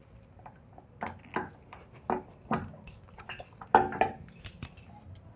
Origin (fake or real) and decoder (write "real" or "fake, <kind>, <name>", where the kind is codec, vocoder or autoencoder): real